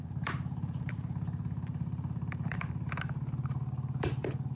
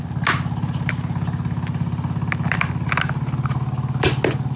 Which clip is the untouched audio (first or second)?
second